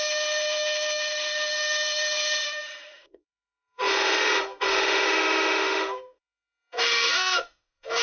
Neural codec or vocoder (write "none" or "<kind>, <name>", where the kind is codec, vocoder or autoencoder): autoencoder, DAC-VAE